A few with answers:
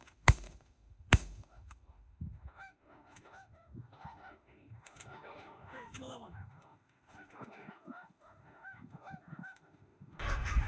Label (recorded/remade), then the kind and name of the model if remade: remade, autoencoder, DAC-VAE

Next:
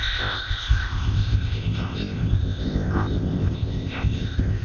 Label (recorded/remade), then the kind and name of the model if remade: remade, codec, ZipCodec